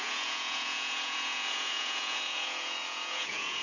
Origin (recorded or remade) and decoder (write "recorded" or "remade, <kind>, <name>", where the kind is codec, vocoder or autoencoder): remade, vocoder, Vocos